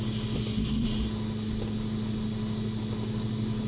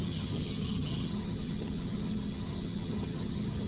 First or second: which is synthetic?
second